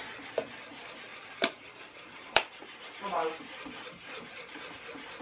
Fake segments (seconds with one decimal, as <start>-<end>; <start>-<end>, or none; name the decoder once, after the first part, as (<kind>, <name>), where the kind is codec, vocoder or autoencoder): 1.1-4.2 (vocoder, BigVGAN v2)